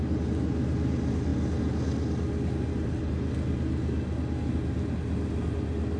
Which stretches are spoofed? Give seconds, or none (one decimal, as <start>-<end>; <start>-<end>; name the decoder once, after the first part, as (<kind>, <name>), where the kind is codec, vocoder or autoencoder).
none